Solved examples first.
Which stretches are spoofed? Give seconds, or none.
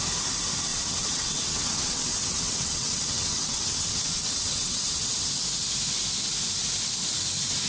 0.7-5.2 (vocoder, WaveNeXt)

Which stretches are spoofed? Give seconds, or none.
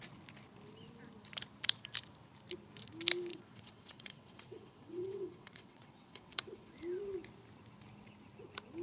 3.3-6.7 (vocoder, WaveNeXt)